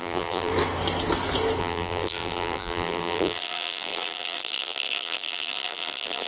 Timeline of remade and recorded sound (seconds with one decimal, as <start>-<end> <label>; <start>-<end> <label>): 0.0-0.5 remade; 0.5-1.6 recorded; 1.6-6.3 remade